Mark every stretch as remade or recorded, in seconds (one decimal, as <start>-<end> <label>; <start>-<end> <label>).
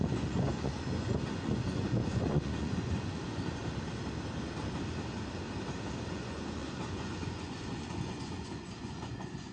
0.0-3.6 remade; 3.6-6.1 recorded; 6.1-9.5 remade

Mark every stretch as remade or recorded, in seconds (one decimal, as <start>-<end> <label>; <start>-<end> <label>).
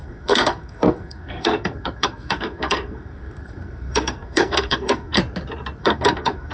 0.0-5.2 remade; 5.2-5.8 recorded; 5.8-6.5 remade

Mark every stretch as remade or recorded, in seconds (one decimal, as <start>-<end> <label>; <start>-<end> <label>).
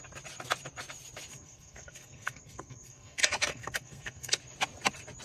0.0-1.3 recorded; 1.3-4.4 remade; 4.4-5.2 recorded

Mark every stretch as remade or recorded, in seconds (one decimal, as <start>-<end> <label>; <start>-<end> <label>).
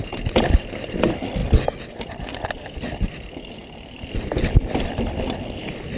0.0-6.0 recorded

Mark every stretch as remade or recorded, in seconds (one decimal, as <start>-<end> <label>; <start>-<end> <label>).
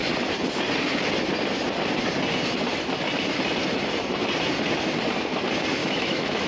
0.0-5.8 recorded; 5.8-6.5 remade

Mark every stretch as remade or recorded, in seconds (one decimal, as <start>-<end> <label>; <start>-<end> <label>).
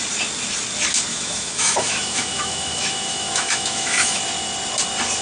0.0-1.1 recorded; 1.1-4.2 remade; 4.2-5.2 recorded